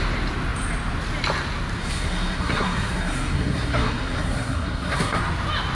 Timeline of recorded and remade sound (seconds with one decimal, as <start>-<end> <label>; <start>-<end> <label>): 0.0-1.8 recorded; 1.8-5.2 remade; 5.2-5.7 recorded